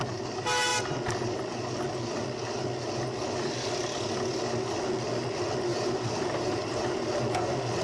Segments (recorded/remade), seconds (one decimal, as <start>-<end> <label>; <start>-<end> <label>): 0.0-5.7 recorded; 5.7-7.1 remade; 7.1-7.8 recorded